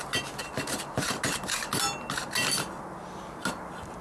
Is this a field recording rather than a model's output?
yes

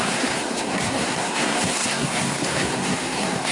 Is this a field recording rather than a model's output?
no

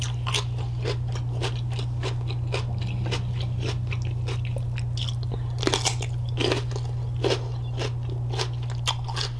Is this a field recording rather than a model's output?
yes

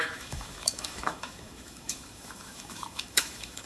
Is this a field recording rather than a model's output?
no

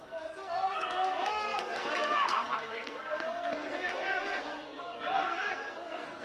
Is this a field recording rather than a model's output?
no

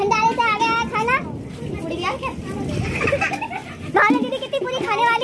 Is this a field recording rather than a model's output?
yes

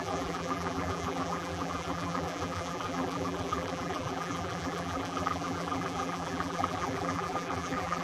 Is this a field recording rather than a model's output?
no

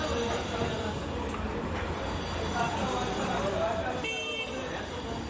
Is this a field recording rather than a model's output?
yes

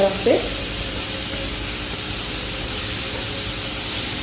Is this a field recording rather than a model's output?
yes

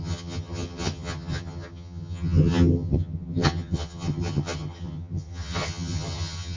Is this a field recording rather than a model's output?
no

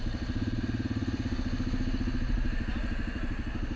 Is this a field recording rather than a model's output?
yes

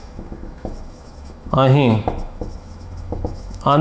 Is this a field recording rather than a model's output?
no